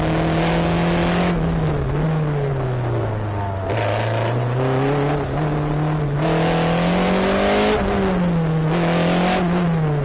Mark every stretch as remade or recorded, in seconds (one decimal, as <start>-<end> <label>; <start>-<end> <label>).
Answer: 0.0-10.0 recorded